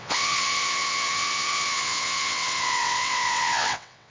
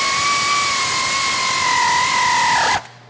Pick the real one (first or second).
second